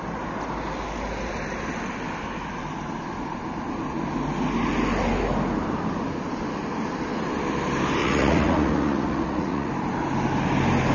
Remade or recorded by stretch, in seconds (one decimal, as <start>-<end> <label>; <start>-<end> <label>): 0.0-8.0 recorded; 8.0-9.7 remade; 9.7-10.9 recorded